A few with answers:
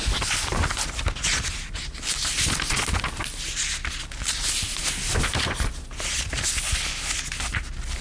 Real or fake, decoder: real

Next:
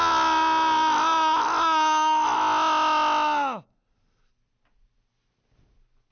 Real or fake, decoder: real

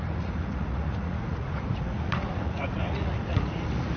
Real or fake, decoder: fake, vocoder, Vocos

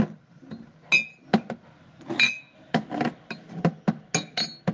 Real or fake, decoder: real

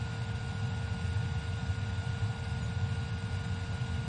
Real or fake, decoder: real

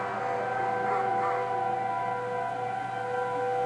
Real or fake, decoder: real